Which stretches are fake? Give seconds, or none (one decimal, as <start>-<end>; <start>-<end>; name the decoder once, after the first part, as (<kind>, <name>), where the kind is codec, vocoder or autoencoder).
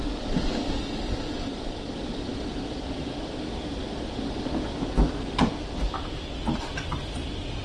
none